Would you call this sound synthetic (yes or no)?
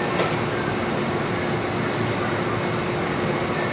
no